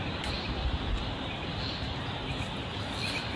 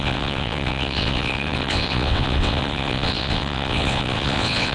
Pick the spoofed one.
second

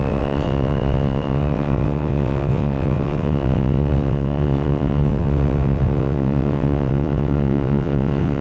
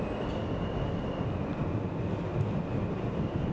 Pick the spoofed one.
first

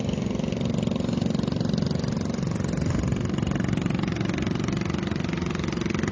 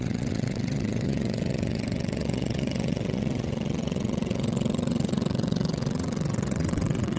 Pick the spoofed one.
second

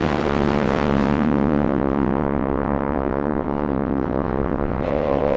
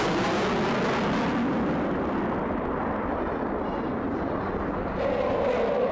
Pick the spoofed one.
first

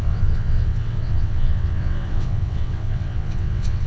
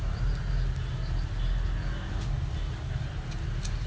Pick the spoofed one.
first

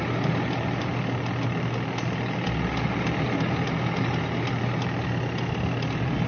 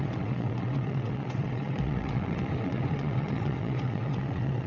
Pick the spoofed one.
second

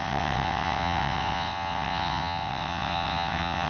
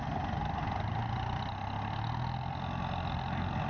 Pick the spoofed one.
first